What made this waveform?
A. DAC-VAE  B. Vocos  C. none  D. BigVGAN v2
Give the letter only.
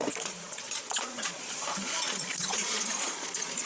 B